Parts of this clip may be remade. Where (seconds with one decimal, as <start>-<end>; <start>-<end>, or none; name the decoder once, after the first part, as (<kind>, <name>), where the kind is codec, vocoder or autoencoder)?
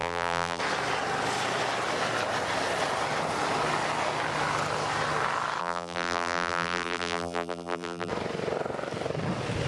0.0-0.6 (vocoder, BigVGAN v2); 5.6-8.1